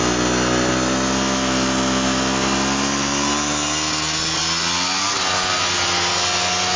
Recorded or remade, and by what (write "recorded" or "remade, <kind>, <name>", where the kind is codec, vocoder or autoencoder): recorded